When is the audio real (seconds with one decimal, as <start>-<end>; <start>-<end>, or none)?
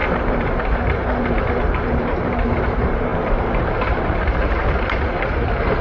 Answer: none